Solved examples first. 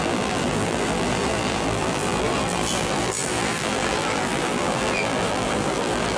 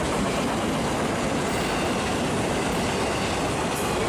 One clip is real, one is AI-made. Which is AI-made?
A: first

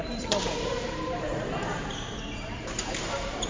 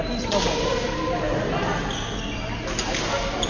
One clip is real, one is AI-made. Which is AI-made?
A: first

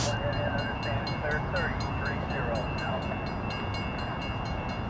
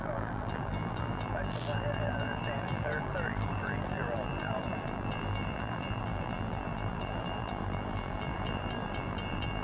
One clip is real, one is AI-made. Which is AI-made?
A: second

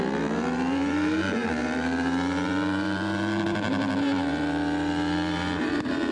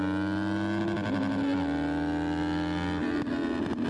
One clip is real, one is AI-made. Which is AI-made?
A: first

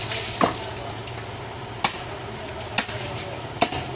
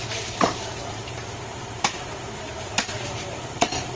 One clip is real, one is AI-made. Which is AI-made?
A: second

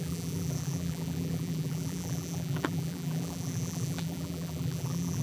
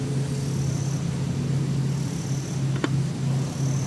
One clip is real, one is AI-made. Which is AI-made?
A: first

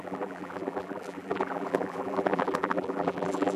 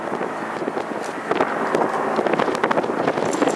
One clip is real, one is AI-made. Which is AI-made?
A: first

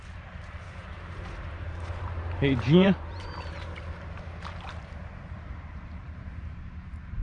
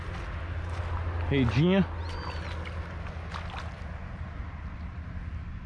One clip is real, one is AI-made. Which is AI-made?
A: first